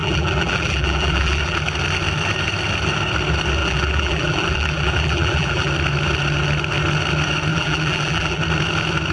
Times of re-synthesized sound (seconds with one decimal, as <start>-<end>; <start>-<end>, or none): 0.0-1.6; 3.6-5.7; 7.5-8.4